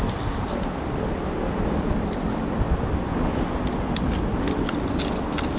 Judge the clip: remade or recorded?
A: remade